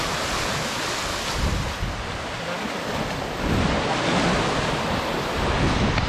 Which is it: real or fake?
real